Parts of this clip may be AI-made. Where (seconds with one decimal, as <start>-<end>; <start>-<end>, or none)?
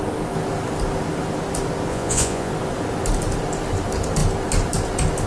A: 1.9-2.5